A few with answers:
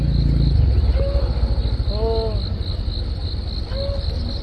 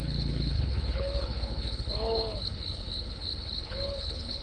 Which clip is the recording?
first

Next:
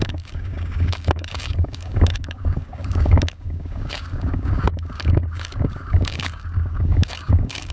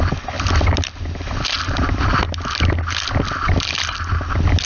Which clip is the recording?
second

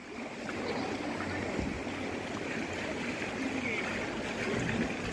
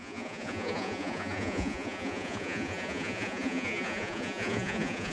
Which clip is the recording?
first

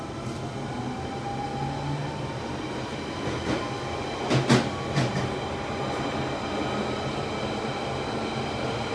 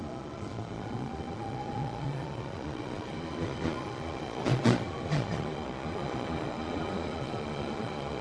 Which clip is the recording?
first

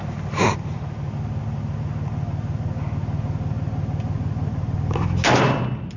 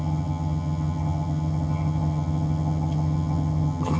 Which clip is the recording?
first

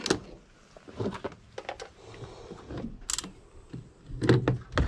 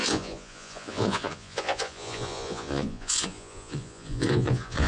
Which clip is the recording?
first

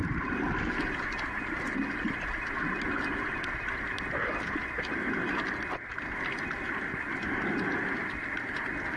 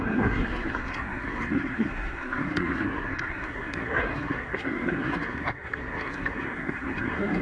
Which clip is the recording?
first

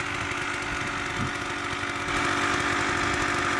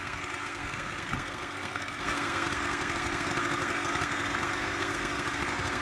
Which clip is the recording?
first